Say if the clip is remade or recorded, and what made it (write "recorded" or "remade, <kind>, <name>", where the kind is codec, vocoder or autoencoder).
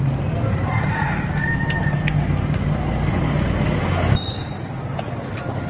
recorded